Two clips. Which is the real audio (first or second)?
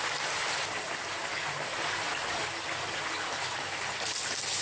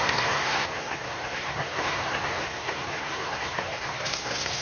first